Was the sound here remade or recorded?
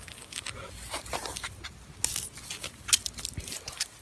recorded